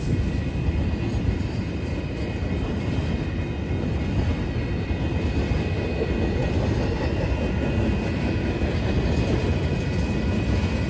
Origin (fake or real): real